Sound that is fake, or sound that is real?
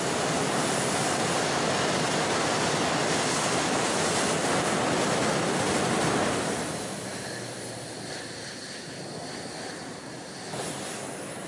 real